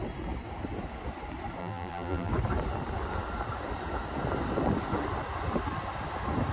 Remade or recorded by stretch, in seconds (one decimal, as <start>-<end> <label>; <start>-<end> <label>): 0.0-1.6 recorded; 1.6-2.3 remade; 2.3-6.5 recorded

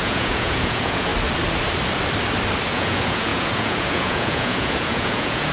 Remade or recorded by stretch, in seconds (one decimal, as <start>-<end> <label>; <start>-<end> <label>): 0.0-1.1 remade; 1.1-2.7 recorded; 2.7-5.5 remade

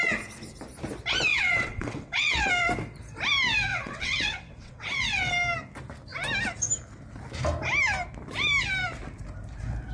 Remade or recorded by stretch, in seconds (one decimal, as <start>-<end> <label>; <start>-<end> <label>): 0.0-1.3 recorded; 1.3-2.5 remade; 2.5-3.7 recorded; 3.7-5.3 remade; 5.3-9.9 recorded

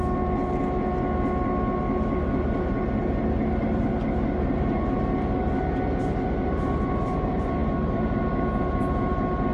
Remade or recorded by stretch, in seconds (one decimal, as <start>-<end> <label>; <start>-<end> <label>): 0.0-9.5 recorded